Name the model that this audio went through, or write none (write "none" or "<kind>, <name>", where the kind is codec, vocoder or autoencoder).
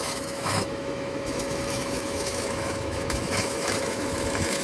autoencoder, DAC-VAE